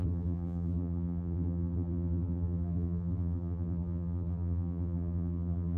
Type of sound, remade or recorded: remade